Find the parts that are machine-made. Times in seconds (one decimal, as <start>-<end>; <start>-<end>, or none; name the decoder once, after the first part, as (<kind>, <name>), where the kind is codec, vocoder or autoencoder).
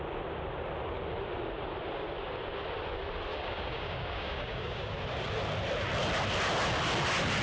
3.3-4.9 (codec, DAC)